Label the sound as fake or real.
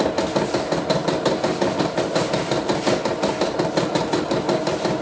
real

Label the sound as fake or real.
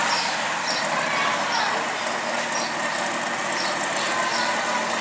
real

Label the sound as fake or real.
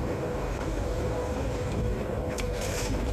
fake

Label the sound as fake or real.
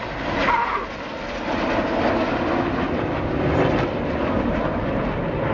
real